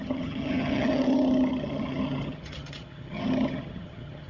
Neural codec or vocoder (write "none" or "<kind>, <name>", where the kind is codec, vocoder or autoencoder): vocoder, HiFi-GAN